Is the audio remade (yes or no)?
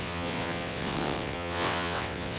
yes